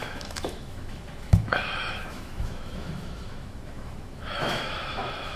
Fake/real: fake